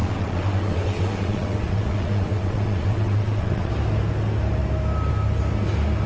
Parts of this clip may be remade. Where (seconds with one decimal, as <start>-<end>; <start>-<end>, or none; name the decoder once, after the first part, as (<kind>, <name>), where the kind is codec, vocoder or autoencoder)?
0.0-3.7 (vocoder, WaveNeXt)